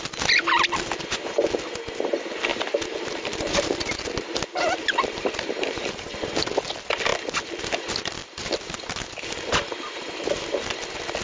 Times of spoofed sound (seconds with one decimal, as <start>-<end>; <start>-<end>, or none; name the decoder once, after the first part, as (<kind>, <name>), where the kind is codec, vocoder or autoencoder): 2.5-6.3 (vocoder, BigVGAN v2); 8.2-8.8